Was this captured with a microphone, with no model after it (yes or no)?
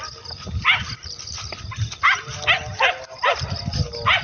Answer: yes